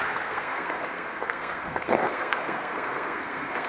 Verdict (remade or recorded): remade